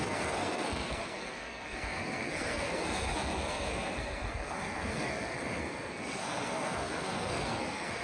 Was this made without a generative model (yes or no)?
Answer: no